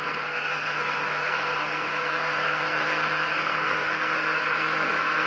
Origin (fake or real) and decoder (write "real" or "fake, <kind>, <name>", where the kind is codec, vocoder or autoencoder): fake, codec, SNAC